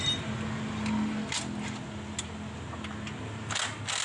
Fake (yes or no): no